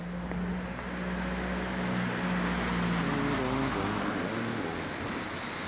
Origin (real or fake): real